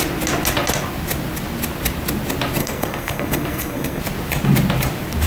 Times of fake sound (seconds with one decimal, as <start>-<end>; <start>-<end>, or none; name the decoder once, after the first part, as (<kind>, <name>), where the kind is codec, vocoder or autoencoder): 2.6-4.0 (codec, SNAC)